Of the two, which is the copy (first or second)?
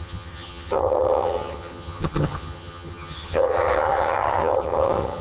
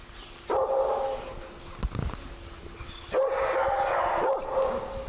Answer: first